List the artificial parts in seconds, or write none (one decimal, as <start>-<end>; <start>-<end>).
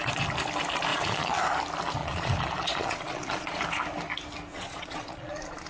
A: 0.9-1.4; 2.0-3.6; 4.5-5.7